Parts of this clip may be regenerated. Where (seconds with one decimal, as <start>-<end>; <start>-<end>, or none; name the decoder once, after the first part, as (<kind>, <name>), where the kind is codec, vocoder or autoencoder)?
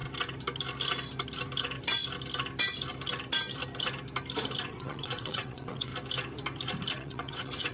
4.6-5.9 (vocoder, WaveNeXt); 6.9-7.7